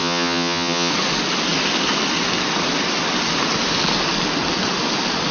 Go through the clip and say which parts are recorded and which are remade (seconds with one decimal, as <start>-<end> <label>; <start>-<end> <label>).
0.0-0.9 remade; 0.9-5.3 recorded